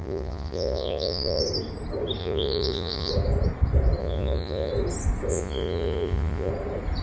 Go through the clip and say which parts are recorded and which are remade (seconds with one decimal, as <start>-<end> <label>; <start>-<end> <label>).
0.0-1.4 remade; 1.4-2.2 recorded; 2.2-3.1 remade; 3.1-4.0 recorded; 4.0-4.7 remade; 4.7-5.3 recorded; 5.3-6.5 remade; 6.5-7.0 recorded